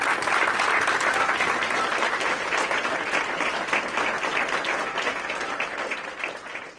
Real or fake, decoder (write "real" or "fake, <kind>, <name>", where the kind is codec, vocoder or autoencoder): real